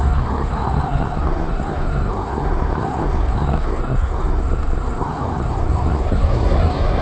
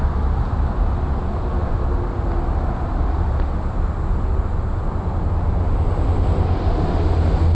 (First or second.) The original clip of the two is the second